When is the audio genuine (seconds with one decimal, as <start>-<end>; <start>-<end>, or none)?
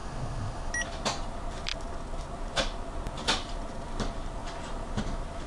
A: 0.7-5.5